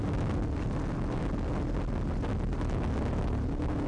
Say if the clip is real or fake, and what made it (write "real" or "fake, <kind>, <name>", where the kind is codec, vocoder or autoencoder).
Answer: real